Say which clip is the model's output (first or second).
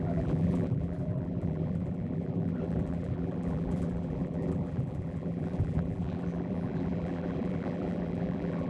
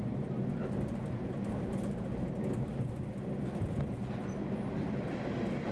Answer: first